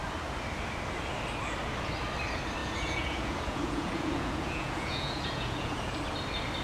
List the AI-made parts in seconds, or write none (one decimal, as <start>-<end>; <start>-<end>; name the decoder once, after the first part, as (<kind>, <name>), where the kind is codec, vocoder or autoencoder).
2.6-6.0 (vocoder, Vocos)